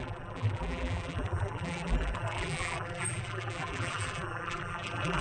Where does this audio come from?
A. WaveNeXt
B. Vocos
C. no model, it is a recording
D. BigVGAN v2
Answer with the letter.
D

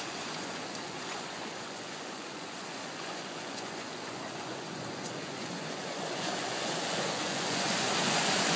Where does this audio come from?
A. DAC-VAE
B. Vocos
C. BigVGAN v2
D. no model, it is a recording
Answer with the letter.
B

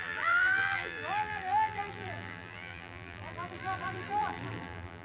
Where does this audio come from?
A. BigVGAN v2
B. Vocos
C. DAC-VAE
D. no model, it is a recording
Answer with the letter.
A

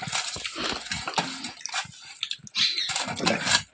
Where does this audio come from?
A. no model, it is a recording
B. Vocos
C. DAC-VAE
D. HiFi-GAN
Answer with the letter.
A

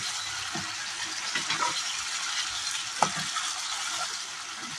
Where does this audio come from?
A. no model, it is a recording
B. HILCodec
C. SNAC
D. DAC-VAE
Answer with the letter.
A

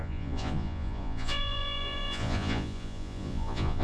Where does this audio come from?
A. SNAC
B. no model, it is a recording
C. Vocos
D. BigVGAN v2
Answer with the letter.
C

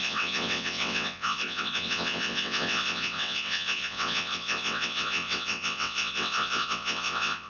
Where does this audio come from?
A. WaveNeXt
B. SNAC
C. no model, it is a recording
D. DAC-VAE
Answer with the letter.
A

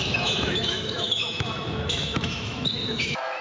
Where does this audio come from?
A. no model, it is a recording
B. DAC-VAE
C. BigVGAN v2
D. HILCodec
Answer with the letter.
B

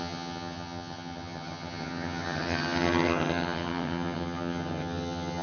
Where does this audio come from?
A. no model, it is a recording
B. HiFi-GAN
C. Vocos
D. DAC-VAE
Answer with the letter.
B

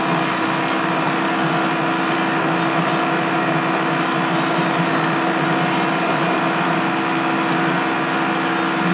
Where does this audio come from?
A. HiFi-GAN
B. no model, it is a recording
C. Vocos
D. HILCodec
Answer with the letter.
B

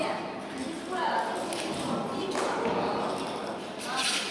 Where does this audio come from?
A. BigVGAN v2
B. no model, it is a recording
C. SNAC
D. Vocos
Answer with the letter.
B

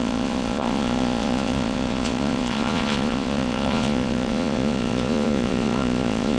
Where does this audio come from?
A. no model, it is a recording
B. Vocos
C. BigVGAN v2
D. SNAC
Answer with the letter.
B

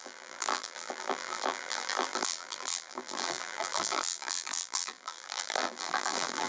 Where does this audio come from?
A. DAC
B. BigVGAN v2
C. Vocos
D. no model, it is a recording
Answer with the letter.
B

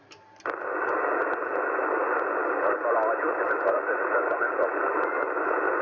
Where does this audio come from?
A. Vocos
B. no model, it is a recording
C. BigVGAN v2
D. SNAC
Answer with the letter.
B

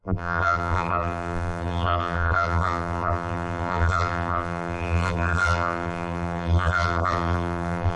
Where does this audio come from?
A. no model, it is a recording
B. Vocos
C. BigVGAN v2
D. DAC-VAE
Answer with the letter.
C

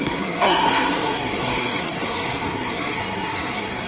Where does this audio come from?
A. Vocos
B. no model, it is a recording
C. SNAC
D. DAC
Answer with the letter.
C